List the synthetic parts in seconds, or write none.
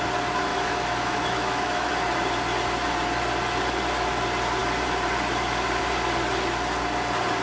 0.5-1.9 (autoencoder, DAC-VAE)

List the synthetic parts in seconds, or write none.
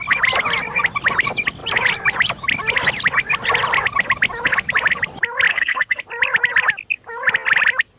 5.5-6.0 (codec, SNAC)